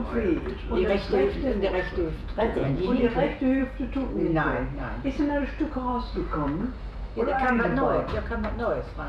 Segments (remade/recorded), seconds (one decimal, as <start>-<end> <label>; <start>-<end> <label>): 0.0-2.2 recorded; 2.2-3.0 remade; 3.0-9.1 recorded